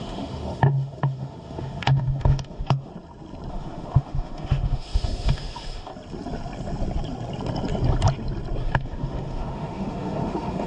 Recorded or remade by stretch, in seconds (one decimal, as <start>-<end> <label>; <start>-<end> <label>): 0.0-2.9 remade; 2.9-3.5 recorded; 3.5-5.9 remade; 5.9-8.6 recorded; 8.6-10.7 remade